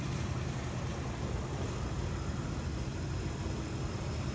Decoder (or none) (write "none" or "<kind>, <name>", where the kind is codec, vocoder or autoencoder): none